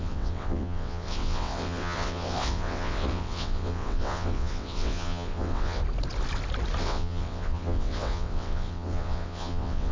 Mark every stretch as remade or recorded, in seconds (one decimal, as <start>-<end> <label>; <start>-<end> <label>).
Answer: 0.0-5.8 remade; 5.8-6.8 recorded; 6.8-9.9 remade